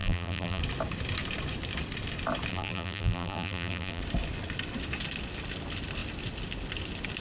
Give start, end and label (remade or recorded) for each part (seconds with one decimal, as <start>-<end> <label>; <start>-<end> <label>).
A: 0.0-0.6 remade; 0.6-2.5 recorded; 2.5-4.0 remade; 4.0-7.2 recorded